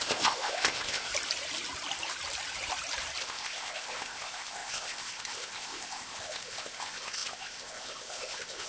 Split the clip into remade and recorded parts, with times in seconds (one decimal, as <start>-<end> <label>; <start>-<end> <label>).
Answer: 0.0-1.1 remade; 1.1-3.2 recorded; 3.2-8.7 remade